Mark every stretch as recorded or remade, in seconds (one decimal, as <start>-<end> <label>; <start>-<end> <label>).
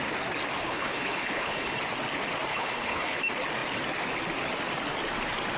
0.0-0.6 recorded; 0.6-1.8 remade; 1.8-2.5 recorded; 2.5-3.2 remade; 3.2-5.6 recorded